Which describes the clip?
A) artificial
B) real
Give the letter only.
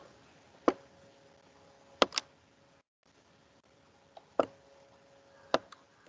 B